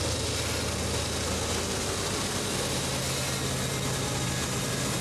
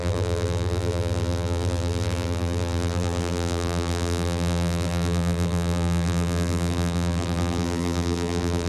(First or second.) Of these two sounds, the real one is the first